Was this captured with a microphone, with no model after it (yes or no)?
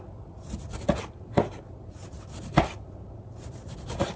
yes